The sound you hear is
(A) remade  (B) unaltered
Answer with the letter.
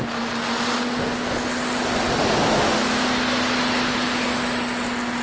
B